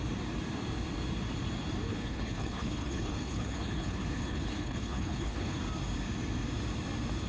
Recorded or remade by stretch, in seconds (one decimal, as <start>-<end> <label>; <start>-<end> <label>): 0.0-1.9 recorded; 1.9-5.6 remade; 5.6-7.3 recorded